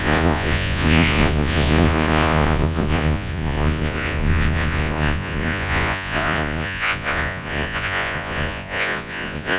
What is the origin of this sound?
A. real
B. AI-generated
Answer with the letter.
B